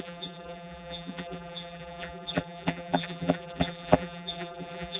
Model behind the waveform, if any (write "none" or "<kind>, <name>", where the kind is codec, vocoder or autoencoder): vocoder, BigVGAN v2